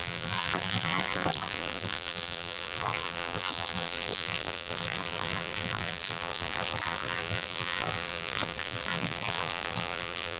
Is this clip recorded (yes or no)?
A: no